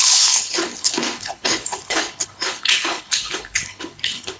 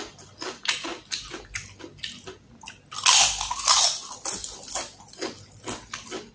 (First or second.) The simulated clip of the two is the first